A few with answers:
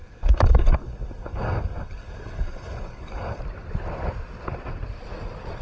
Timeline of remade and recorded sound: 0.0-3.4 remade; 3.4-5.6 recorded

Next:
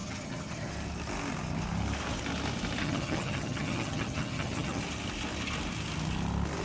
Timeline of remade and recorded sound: 0.0-0.7 remade; 0.7-2.8 recorded; 2.8-4.8 remade; 4.8-6.6 recorded

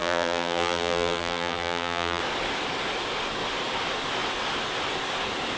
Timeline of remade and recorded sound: 0.0-2.2 remade; 2.2-5.6 recorded

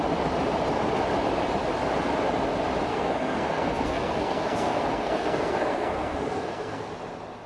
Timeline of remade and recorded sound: 0.0-2.9 recorded; 2.9-6.9 remade; 6.9-7.5 recorded

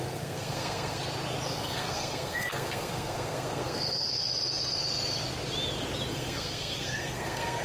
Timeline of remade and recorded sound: 0.0-1.0 remade; 1.0-1.5 recorded; 1.5-4.2 remade; 4.2-6.1 recorded; 6.1-7.6 remade